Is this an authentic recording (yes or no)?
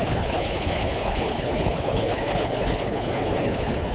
no